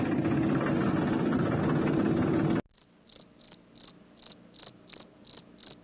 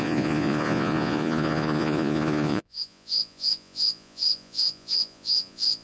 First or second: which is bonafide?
first